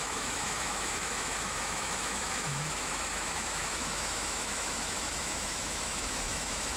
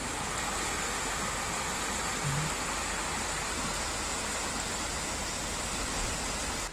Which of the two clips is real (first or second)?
second